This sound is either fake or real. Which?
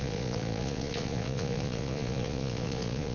fake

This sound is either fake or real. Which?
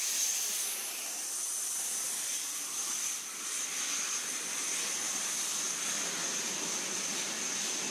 real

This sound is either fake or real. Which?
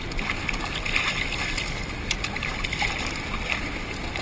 real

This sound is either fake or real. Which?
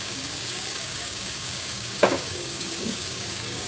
fake